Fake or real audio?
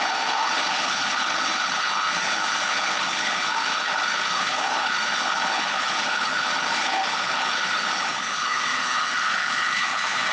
fake